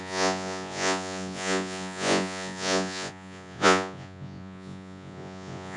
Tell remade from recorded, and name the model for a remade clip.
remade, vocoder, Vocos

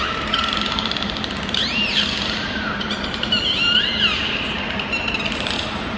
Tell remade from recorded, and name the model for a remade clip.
remade, vocoder, BigVGAN v2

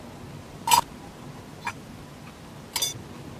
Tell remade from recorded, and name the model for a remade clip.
recorded